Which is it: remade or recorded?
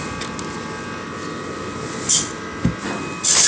recorded